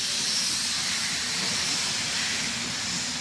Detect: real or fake real